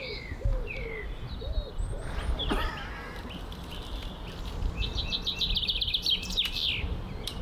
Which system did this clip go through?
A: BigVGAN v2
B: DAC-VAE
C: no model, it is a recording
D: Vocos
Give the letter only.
A